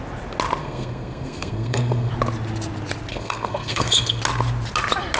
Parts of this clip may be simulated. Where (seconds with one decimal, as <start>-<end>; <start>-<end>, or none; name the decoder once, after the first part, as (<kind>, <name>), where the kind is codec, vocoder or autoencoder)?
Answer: 0.6-2.1 (codec, SNAC); 3.1-4.2

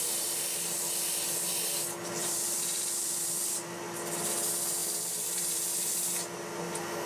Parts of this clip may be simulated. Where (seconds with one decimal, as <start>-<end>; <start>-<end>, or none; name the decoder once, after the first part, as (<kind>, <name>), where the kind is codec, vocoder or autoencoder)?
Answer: 2.2-3.5 (vocoder, BigVGAN v2); 4.8-5.9

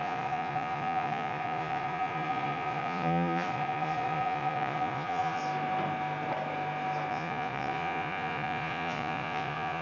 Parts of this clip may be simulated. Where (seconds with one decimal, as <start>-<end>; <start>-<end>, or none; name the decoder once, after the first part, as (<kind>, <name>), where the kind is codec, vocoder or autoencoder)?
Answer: 0.0-5.4 (vocoder, Vocos); 7.1-9.8